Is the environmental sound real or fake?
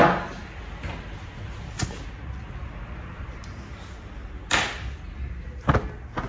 real